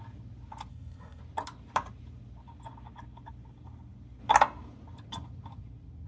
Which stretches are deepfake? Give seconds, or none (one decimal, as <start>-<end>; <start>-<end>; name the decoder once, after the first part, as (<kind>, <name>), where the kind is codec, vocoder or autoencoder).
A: 0.7-1.2 (codec, SNAC)